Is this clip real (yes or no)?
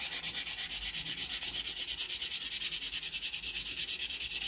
yes